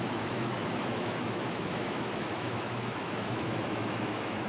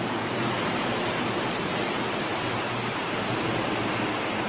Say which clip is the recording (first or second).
second